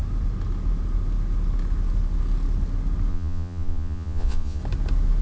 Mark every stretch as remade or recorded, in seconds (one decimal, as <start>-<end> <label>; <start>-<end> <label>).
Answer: 0.0-3.1 recorded; 3.1-4.6 remade; 4.6-5.2 recorded